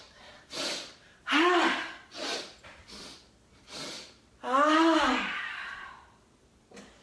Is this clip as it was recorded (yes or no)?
yes